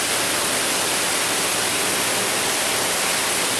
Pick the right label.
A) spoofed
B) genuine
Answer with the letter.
B